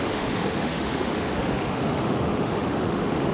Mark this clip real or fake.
fake